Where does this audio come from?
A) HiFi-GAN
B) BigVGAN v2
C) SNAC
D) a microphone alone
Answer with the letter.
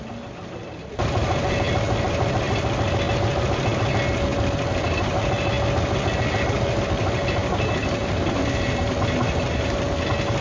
D